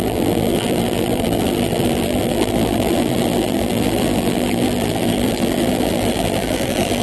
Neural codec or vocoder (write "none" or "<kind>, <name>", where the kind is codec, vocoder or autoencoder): vocoder, BigVGAN v2